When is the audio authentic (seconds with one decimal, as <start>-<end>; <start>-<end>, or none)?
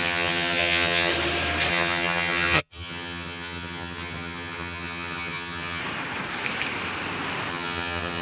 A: 1.1-1.7; 5.8-7.5